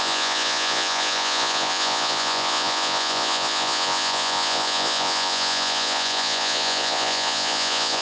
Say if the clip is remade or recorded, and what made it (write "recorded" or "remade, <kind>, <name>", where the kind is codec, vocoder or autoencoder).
remade, vocoder, Vocos